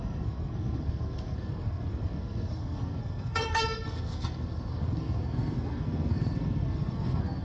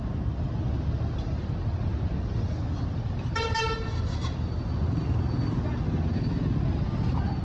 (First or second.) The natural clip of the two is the second